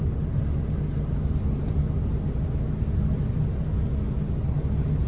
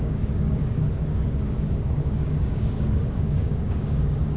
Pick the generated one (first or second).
second